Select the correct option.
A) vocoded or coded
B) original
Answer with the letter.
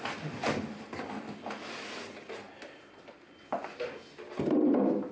B